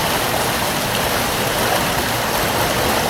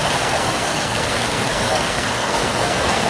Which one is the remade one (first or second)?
second